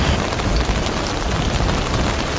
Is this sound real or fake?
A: real